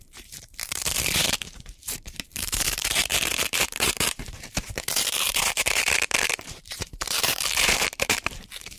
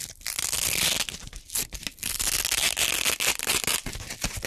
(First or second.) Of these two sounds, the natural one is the second